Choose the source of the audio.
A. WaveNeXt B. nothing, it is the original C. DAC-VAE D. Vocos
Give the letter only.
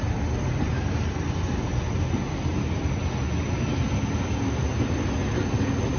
B